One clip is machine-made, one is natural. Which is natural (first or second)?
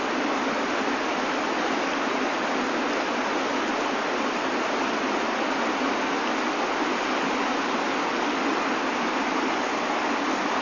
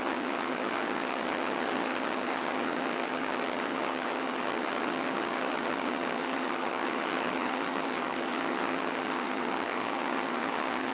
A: first